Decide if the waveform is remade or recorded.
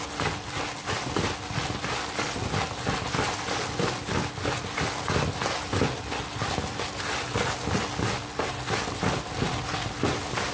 recorded